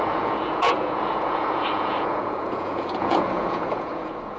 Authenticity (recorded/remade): remade